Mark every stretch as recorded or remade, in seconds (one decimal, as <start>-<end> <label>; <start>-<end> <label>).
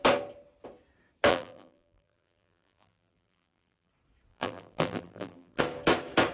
0.0-1.3 recorded; 1.3-3.9 remade; 3.9-4.3 recorded; 4.3-5.6 remade; 5.6-6.3 recorded